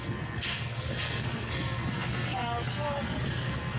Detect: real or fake fake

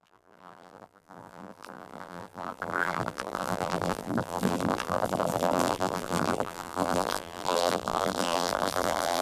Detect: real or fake fake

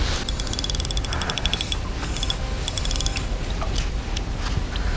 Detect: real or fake real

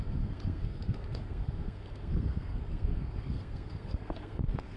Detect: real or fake fake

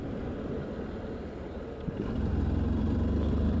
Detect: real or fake fake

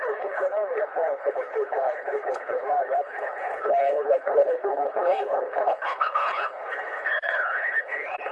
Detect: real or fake fake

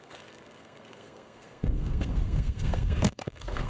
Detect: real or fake fake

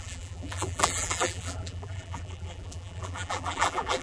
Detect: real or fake fake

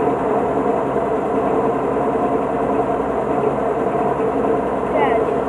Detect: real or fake real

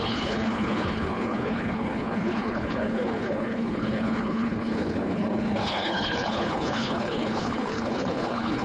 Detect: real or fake fake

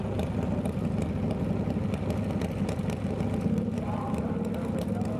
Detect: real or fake real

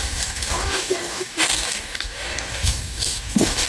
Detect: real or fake fake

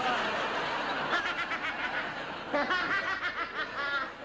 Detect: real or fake real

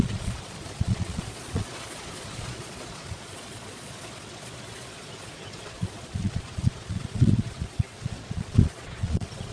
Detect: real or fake fake